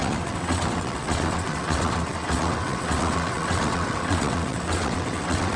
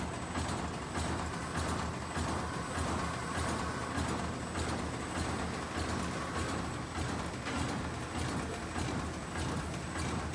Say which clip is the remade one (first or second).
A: first